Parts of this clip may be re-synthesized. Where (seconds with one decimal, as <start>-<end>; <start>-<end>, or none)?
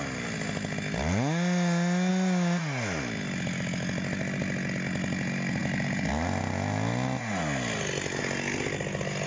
none